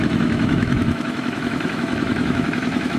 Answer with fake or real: fake